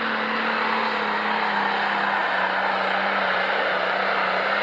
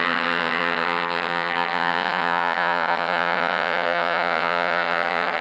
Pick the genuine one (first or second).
first